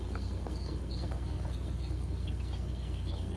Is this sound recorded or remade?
remade